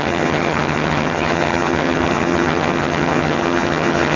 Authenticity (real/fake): fake